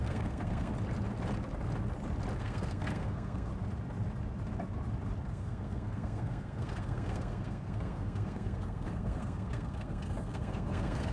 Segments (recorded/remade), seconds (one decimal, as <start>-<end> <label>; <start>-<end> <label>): 0.0-0.7 remade; 0.7-2.4 recorded; 2.4-3.5 remade; 3.5-5.3 recorded; 5.3-11.1 remade